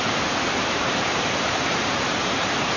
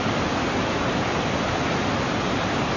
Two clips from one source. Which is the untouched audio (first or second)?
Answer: second